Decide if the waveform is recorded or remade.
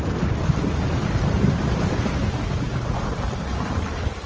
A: recorded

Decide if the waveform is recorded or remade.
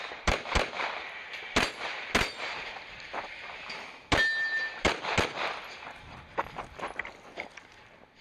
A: recorded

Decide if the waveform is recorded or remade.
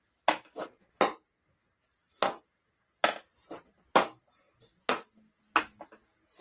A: recorded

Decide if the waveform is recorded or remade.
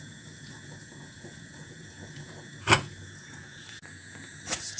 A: remade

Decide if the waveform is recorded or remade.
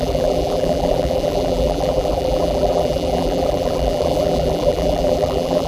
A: remade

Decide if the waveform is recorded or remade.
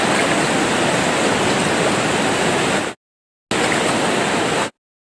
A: recorded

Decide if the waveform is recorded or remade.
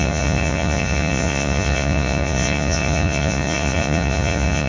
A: remade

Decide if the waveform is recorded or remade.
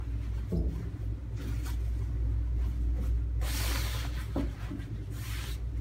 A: recorded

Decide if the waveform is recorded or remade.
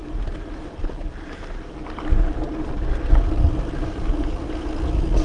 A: recorded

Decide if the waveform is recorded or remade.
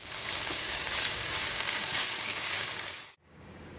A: remade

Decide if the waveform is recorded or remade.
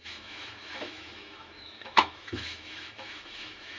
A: remade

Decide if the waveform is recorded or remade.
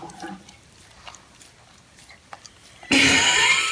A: recorded